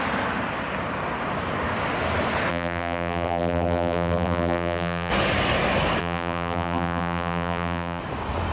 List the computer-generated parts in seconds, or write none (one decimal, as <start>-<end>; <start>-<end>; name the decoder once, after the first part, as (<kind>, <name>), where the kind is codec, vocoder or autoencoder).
2.5-5.1 (vocoder, BigVGAN v2); 6.0-8.0